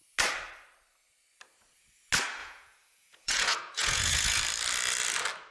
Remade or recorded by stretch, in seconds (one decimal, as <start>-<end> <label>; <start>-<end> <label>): 0.0-2.4 recorded; 2.4-4.4 remade; 4.4-5.5 recorded